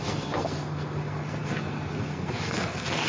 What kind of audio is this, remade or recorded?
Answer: remade